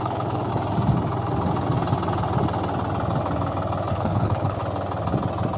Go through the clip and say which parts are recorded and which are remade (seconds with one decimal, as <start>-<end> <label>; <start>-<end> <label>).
0.0-0.5 remade; 0.5-3.9 recorded; 3.9-4.6 remade; 4.6-5.6 recorded